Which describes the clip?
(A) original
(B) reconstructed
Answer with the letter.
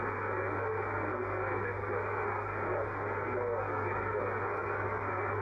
B